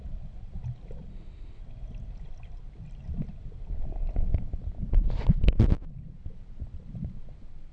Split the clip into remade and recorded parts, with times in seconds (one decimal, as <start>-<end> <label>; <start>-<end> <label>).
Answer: 0.0-1.1 recorded; 1.1-1.6 remade; 1.6-7.7 recorded